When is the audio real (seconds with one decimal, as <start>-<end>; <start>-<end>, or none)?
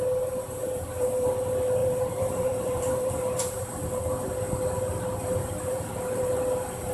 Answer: 0.0-0.6; 1.3-1.8; 4.0-5.4; 6.4-6.9